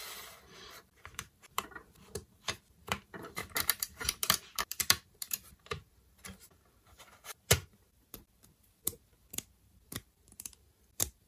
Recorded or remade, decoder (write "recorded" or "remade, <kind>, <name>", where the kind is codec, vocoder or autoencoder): remade, vocoder, BigVGAN v2